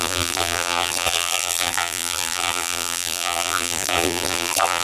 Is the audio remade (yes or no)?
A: yes